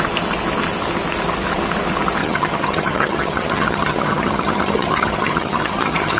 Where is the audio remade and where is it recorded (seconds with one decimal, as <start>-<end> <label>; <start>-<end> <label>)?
0.0-2.2 recorded; 2.2-6.2 remade